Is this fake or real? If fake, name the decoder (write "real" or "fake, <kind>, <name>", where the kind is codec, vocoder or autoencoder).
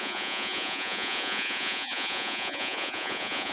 fake, vocoder, Vocos